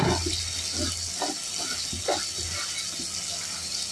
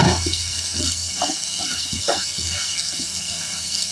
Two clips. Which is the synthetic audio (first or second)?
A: second